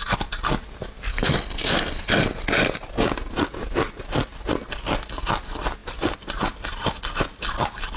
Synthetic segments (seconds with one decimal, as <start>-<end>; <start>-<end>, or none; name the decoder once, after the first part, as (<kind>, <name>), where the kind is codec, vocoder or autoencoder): 1.1-2.1 (codec, SNAC)